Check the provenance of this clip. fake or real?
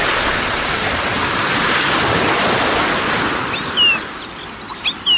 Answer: real